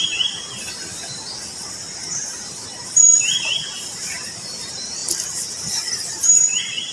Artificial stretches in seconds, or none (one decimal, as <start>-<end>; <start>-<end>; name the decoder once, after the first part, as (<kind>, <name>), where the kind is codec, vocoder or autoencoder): 0.0-0.9 (vocoder, BigVGAN v2); 1.7-5.0; 6.1-6.9